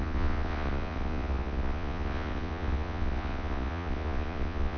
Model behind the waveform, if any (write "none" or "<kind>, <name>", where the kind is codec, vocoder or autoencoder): vocoder, Vocos